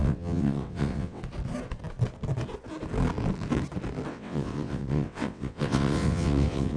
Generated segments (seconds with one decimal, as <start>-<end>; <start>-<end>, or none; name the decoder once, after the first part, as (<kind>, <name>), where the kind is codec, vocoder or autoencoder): 0.0-1.2 (vocoder, WaveNeXt); 4.1-6.8